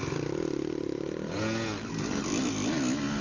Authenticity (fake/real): real